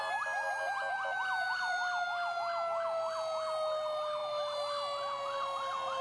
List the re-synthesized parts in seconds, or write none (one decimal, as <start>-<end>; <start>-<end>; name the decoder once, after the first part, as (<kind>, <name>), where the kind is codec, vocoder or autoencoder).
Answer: none